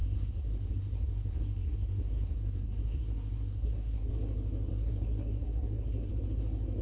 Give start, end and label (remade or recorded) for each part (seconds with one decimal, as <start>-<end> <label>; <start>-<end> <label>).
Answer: 0.0-4.1 remade; 4.1-4.7 recorded; 4.7-6.1 remade; 6.1-6.8 recorded